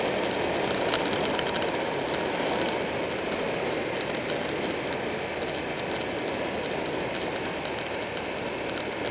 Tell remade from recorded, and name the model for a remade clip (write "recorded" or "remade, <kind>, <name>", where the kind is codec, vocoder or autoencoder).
recorded